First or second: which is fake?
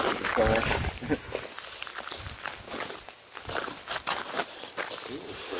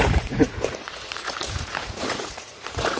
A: second